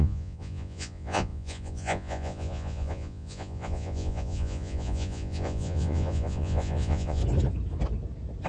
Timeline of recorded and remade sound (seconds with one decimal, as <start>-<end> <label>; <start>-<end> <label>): 0.0-7.2 remade; 7.2-8.5 recorded